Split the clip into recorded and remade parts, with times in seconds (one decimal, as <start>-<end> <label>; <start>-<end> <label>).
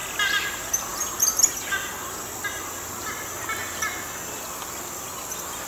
0.0-0.5 remade; 0.5-0.9 recorded; 0.9-1.9 remade; 1.9-3.6 recorded; 3.6-5.7 remade